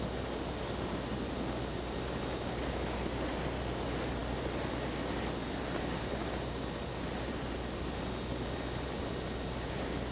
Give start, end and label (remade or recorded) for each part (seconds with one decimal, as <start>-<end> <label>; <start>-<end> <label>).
0.0-10.1 recorded